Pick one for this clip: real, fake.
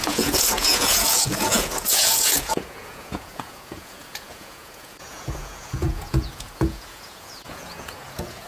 fake